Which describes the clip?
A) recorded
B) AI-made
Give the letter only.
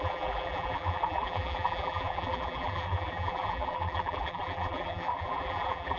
B